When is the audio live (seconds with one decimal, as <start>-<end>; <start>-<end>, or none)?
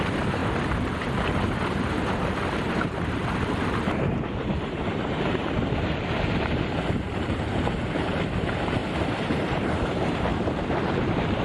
10.3-10.9